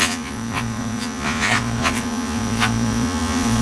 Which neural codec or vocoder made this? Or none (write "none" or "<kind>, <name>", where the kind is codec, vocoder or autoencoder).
vocoder, Vocos